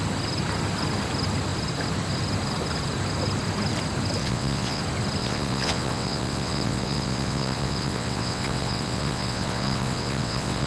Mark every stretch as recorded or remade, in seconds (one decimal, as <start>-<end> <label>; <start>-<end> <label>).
0.0-4.2 recorded; 4.2-4.8 remade; 4.8-5.2 recorded; 5.2-10.7 remade